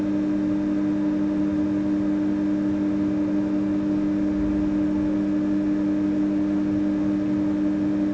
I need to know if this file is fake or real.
real